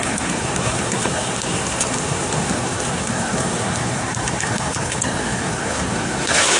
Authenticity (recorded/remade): remade